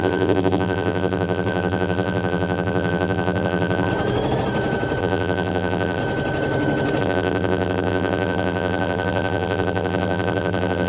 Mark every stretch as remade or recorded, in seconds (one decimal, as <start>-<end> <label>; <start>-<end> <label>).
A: 0.0-3.9 remade; 3.9-5.0 recorded; 5.0-6.0 remade; 6.0-7.0 recorded; 7.0-10.9 remade